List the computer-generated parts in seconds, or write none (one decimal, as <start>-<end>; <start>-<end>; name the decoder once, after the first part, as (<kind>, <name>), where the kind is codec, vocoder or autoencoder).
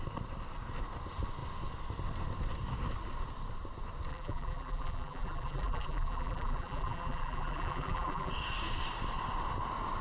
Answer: 4.1-8.3 (vocoder, BigVGAN v2)